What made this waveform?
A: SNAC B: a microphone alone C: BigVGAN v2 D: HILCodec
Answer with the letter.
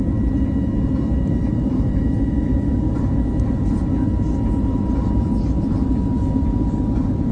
C